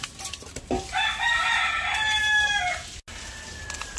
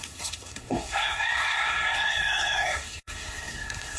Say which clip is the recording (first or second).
first